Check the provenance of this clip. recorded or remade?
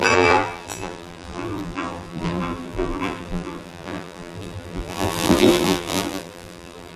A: remade